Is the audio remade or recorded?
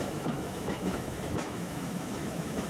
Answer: remade